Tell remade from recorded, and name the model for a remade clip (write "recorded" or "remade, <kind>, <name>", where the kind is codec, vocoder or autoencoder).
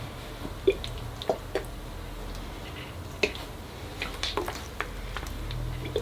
recorded